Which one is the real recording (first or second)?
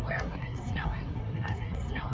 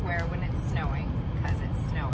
second